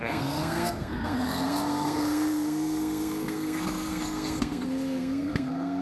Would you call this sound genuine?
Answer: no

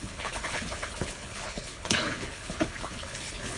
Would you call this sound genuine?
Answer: no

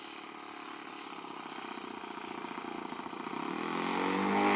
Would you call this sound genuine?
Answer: yes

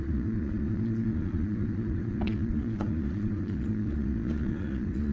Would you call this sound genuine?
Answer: no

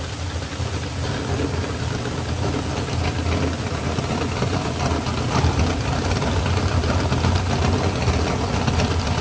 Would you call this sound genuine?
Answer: yes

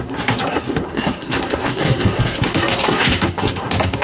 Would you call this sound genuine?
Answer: no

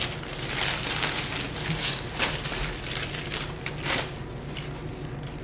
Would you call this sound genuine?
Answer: yes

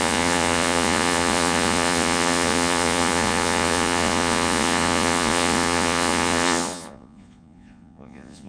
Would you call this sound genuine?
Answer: no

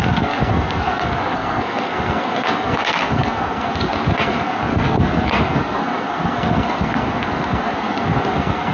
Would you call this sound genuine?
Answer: no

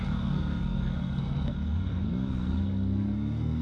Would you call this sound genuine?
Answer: no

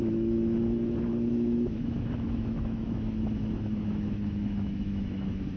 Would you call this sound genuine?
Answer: no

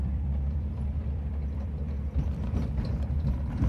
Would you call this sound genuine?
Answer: no